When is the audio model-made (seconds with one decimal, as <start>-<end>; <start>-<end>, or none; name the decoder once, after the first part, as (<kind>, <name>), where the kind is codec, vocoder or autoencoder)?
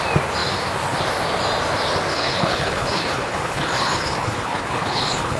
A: 2.1-5.4 (codec, HILCodec)